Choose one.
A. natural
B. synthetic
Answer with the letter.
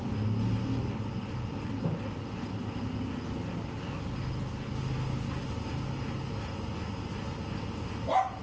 A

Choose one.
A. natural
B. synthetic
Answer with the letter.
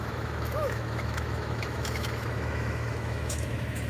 B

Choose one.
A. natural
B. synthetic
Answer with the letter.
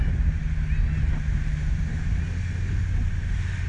A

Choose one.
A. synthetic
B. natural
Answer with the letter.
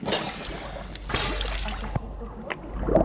B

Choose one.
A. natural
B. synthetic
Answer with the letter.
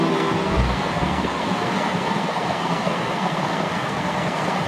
B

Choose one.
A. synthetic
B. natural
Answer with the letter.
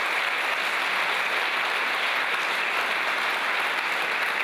B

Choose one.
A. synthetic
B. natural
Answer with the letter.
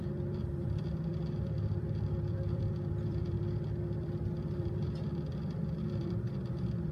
A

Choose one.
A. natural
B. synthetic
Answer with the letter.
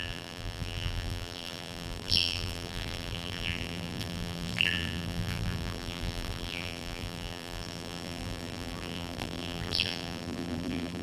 B